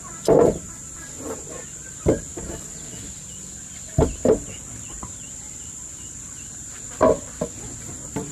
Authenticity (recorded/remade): recorded